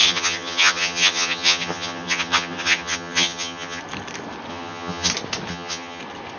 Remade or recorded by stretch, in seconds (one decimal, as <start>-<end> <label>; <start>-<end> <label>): 0.0-3.8 remade; 3.8-4.5 recorded; 4.5-5.1 remade; 5.1-5.5 recorded; 5.5-6.0 remade; 6.0-6.4 recorded